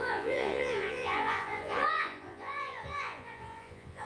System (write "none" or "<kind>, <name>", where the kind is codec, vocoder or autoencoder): vocoder, Vocos